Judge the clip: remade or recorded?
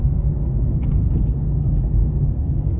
remade